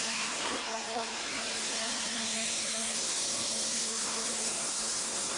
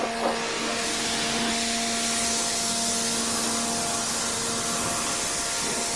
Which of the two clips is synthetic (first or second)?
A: first